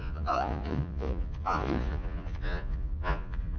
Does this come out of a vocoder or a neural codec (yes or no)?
yes